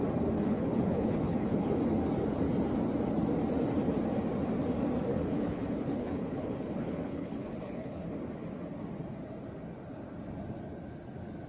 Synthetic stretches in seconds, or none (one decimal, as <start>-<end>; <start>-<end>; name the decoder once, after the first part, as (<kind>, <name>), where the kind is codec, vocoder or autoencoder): 0.4-1.8 (codec, HILCodec); 5.1-8.1